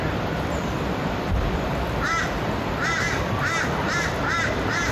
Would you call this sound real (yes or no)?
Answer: no